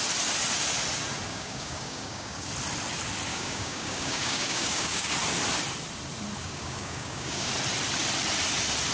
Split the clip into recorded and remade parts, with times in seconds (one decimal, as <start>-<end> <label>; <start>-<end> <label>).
0.0-1.3 recorded; 1.3-2.5 remade; 2.5-3.3 recorded; 3.3-5.1 remade; 5.1-6.4 recorded; 6.4-7.5 remade; 7.5-8.9 recorded